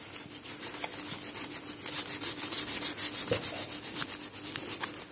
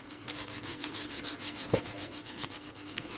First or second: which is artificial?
second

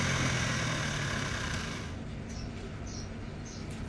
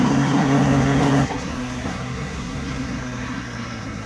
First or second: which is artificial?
second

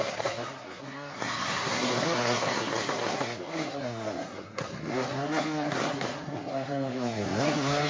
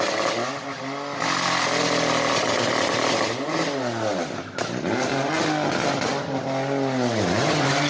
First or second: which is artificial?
first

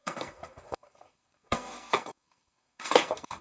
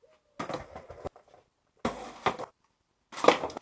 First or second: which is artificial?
first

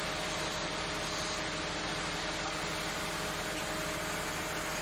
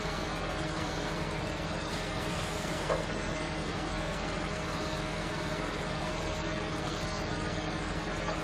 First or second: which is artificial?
second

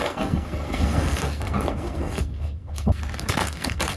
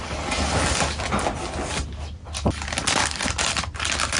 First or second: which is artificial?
first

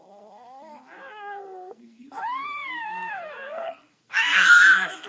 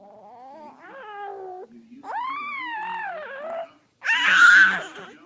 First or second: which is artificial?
first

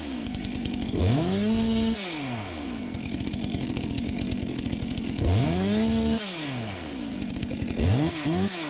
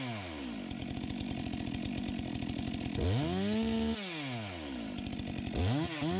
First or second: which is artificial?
first